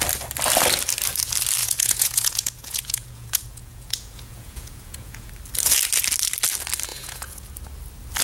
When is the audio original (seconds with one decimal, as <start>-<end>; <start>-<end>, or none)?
0.0-1.6; 5.3-6.9; 7.5-8.2